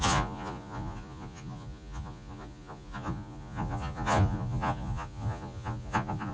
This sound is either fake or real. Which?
fake